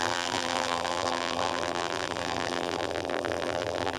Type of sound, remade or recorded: remade